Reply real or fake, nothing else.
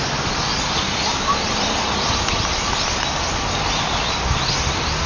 real